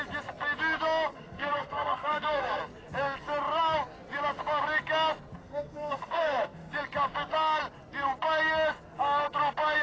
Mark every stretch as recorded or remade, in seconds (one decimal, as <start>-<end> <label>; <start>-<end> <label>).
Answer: 0.0-1.1 recorded; 1.1-2.6 remade; 2.6-5.4 recorded; 5.4-6.7 remade; 6.7-9.8 recorded